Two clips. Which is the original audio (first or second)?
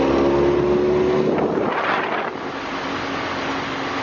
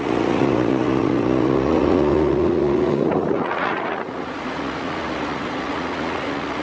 first